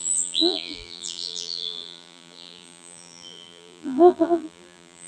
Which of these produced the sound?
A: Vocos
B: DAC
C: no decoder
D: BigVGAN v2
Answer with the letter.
D